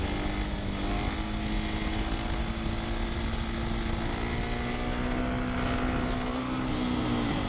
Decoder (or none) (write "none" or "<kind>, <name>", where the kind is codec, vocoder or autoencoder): none